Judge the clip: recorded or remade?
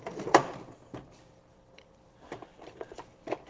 remade